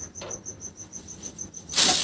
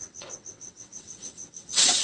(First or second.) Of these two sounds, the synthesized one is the second